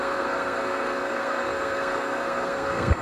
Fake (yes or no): yes